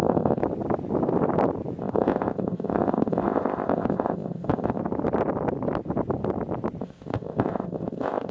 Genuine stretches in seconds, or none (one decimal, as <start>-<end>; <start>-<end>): 0.4-1.8; 4.8-6.8